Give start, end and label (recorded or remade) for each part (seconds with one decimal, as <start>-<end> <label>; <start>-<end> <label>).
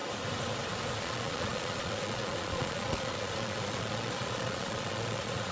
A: 0.0-1.0 recorded; 1.0-5.5 remade